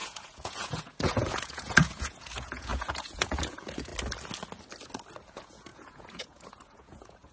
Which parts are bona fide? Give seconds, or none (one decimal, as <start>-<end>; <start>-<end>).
3.9-5.3